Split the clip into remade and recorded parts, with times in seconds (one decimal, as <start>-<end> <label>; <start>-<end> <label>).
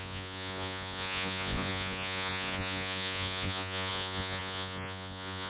0.0-5.5 remade